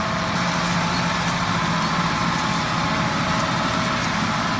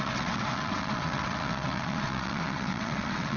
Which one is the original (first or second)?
first